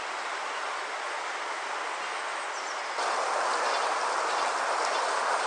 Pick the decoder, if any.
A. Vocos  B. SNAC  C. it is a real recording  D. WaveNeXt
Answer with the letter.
C